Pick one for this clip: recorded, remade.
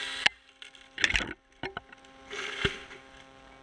recorded